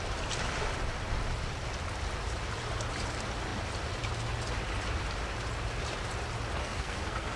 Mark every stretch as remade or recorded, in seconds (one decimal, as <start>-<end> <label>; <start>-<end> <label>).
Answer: 0.0-6.6 recorded; 6.6-7.4 remade